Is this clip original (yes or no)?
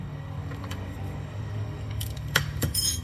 no